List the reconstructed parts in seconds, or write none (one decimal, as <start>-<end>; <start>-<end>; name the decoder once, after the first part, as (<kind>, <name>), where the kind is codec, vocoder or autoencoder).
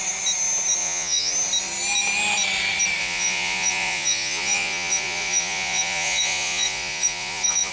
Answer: 0.8-1.3 (vocoder, Vocos); 3.0-7.7